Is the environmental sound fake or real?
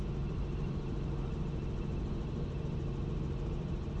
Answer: fake